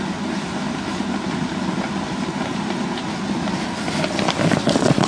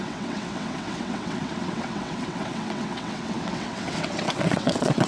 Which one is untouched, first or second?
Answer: first